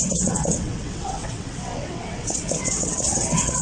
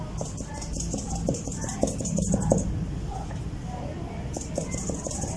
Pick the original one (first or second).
second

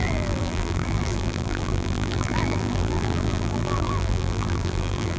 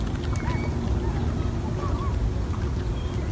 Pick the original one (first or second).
second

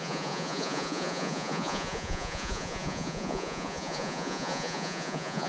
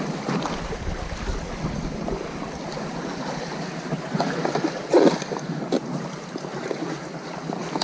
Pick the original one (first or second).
second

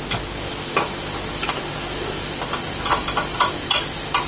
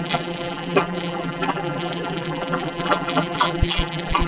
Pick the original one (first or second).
first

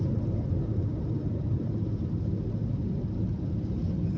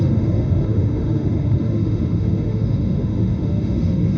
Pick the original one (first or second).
first